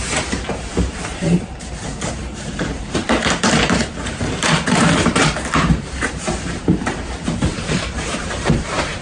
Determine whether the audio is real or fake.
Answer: fake